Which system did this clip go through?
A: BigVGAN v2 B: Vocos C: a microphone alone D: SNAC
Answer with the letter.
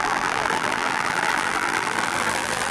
A